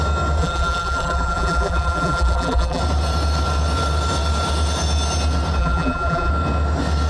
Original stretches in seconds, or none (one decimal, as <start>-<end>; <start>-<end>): 0.0-0.4; 2.8-5.6; 6.3-7.1

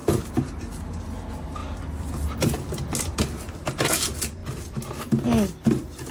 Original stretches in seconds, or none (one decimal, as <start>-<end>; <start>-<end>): 0.5-4.4; 4.9-6.1

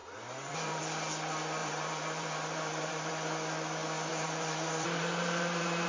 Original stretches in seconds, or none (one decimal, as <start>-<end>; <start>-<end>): 0.8-1.6; 3.1-4.1

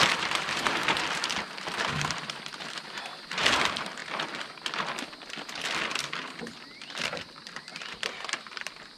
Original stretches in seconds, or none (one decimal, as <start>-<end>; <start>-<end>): 0.8-1.9; 4.0-7.0; 7.7-8.6

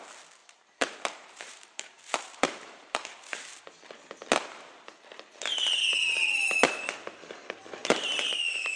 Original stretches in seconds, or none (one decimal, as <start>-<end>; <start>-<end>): 0.0-0.4; 3.6-7.8; 8.4-8.8

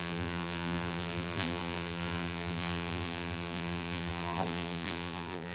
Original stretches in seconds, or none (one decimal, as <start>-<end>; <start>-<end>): none